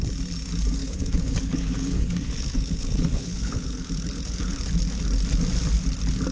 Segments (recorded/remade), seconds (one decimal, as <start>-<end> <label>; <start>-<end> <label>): 0.0-0.8 recorded; 0.8-4.6 remade; 4.6-6.3 recorded